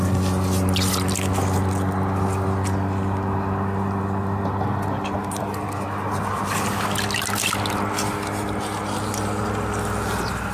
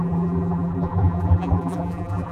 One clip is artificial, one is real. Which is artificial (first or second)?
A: second